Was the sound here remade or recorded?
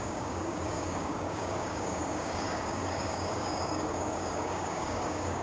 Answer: remade